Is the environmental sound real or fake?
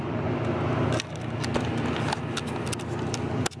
real